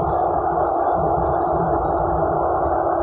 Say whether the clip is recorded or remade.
recorded